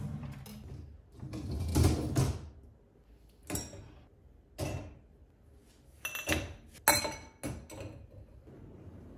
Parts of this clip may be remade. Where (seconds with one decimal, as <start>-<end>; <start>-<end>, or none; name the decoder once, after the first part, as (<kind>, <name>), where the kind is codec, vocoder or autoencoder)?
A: none

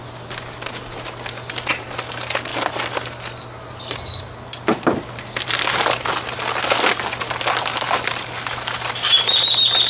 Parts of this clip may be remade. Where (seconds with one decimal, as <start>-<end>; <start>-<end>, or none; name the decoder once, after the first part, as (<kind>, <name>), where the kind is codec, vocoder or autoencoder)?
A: none

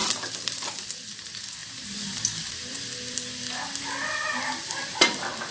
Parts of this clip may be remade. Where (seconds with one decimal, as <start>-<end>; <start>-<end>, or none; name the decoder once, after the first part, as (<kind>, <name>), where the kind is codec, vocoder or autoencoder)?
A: none

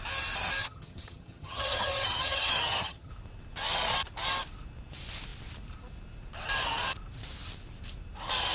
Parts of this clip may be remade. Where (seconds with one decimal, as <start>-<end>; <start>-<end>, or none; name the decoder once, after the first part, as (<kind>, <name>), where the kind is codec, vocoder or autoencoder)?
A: 0.6-3.1 (vocoder, HiFi-GAN)

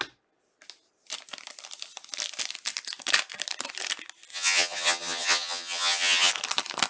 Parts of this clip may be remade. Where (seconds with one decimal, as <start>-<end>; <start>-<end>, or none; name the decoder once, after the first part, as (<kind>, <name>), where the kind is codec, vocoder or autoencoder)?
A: 4.3-6.3 (vocoder, HiFi-GAN)

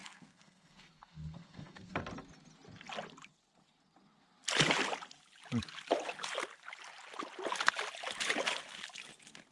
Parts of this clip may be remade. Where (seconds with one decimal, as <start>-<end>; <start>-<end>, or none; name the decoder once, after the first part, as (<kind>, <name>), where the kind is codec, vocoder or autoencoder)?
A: 0.0-2.0 (codec, SNAC)

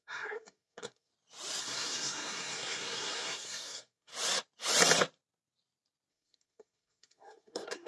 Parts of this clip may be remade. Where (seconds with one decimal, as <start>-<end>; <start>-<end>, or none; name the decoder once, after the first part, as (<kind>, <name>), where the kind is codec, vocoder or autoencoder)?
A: 0.0-1.1 (codec, SNAC); 1.6-4.1; 6.1-7.9

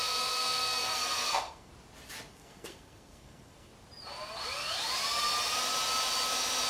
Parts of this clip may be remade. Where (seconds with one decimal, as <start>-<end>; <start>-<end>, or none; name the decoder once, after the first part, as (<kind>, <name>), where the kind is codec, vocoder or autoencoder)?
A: 0.0-1.7 (codec, SNAC); 2.3-3.7